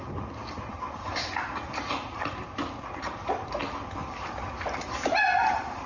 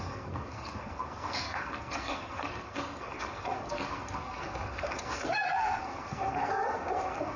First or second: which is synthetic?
second